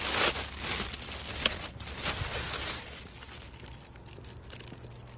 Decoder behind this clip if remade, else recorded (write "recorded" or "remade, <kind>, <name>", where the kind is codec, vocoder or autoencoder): recorded